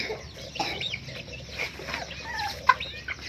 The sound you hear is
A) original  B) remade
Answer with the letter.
A